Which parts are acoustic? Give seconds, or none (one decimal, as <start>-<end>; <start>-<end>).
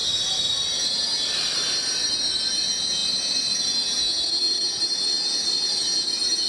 0.0-6.5